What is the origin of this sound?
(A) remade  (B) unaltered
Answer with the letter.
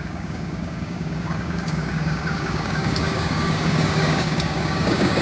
A